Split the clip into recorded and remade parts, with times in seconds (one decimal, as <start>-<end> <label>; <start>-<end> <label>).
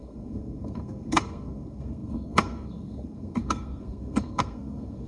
0.0-5.1 remade